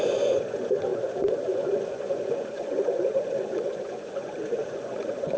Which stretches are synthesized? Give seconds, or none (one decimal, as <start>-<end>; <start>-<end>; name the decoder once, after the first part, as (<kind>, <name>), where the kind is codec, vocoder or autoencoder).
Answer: 0.0-5.4 (vocoder, Vocos)